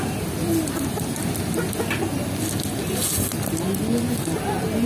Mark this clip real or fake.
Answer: real